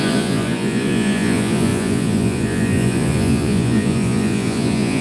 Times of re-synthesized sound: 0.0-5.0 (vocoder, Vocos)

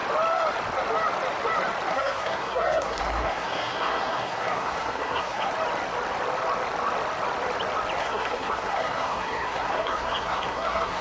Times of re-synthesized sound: 1.9-5.5 (codec, SNAC); 8.0-11.0

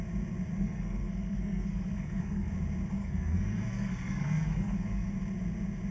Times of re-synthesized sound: 0.6-2.5 (codec, SNAC); 3.0-5.1

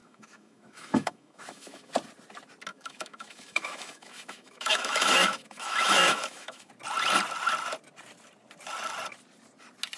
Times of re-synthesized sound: 0.0-1.9 (autoencoder, DAC-VAE); 2.7-6.7

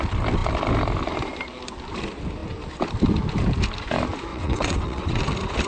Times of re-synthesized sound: 4.3-5.2 (vocoder, WaveNeXt)

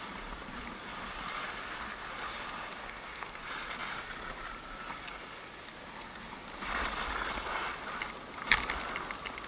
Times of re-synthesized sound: 2.8-3.4 (codec, SNAC)

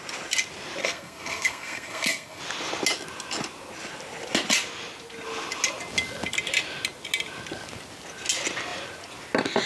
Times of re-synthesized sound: 0.8-2.4 (codec, SNAC)

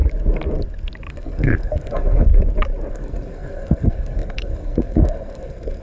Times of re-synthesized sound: 1.1-2.3 (codec, SNAC); 2.9-5.8